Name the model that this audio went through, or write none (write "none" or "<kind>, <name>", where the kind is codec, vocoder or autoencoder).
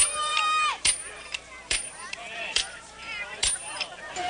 vocoder, BigVGAN v2